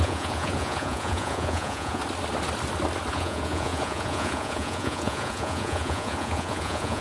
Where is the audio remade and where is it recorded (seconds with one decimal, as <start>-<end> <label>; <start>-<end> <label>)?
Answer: 0.0-2.0 remade; 2.0-3.1 recorded; 3.1-7.0 remade